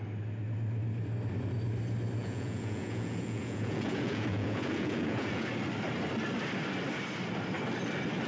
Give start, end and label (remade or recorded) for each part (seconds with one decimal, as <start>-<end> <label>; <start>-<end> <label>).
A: 0.0-2.2 recorded; 2.2-5.5 remade; 5.5-8.3 recorded